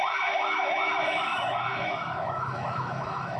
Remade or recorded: remade